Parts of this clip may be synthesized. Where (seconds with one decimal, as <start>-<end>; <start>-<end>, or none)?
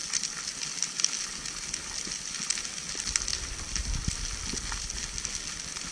none